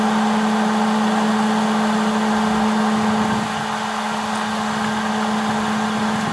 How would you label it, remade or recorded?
recorded